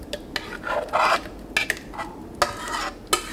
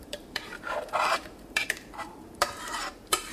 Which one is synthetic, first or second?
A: second